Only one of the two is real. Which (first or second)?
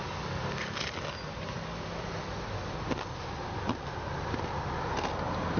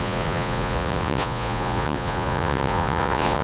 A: first